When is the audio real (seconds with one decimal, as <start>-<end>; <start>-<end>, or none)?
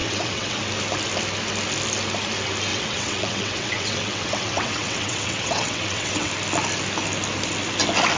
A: 0.6-2.7; 6.3-8.2